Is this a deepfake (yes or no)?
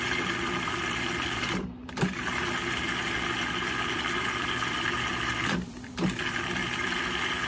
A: yes